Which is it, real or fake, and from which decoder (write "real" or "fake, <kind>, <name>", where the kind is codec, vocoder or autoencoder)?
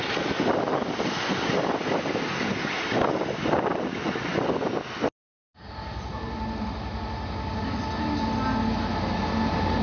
real